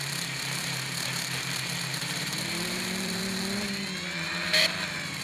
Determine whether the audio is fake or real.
fake